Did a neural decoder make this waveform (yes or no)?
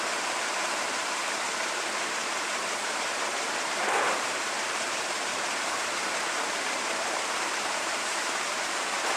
yes